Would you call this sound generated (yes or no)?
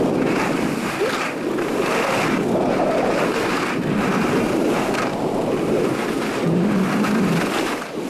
no